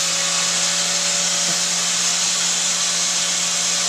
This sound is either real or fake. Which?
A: real